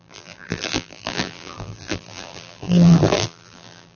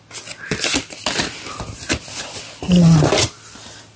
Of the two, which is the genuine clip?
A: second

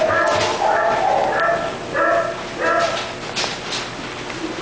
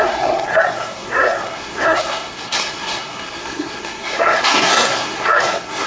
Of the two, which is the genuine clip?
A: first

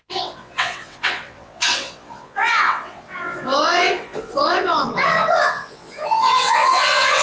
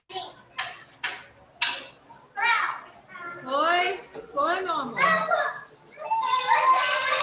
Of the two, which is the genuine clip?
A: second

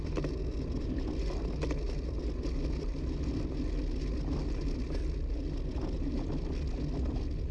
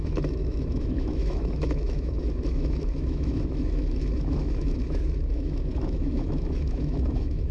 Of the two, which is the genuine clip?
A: first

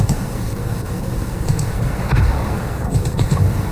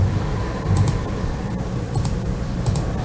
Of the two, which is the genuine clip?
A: second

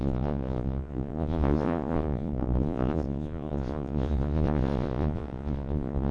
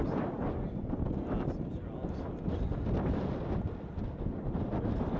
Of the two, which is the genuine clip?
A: second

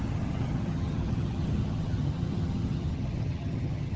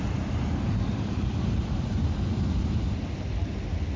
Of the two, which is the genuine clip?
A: second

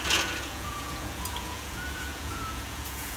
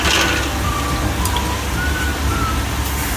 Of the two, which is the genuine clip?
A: second